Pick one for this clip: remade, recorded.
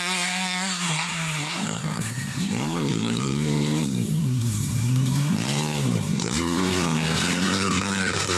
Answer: remade